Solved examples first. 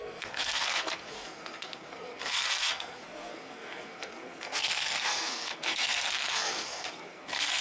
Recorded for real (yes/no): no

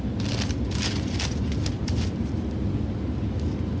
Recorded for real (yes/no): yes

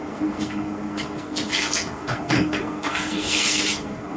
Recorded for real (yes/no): no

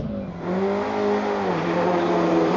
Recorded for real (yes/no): yes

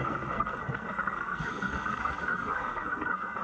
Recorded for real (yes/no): no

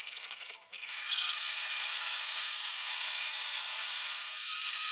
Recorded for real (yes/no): no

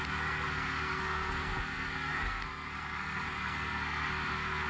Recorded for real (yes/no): no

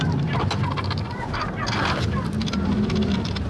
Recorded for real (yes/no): yes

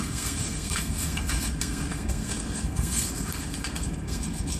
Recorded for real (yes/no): no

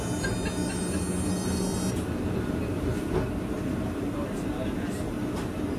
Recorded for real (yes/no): yes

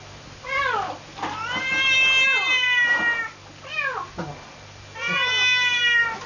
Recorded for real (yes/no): yes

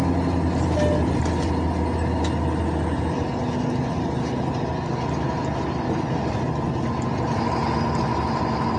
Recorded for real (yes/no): yes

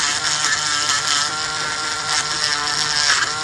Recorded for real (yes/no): yes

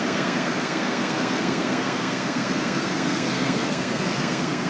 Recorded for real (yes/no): no